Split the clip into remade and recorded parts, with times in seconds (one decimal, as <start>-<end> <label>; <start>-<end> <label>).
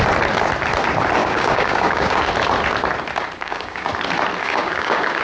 0.0-1.2 recorded; 1.2-2.3 remade; 2.3-3.4 recorded; 3.4-3.9 remade; 3.9-4.4 recorded; 4.4-5.2 remade